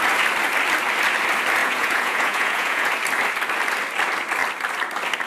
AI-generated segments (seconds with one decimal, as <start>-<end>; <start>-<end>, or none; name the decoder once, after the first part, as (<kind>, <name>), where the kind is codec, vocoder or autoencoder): 1.6-2.9 (vocoder, Vocos)